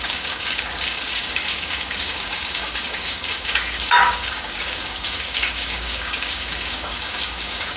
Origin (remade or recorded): remade